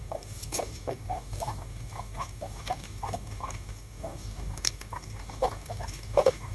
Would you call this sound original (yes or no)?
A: no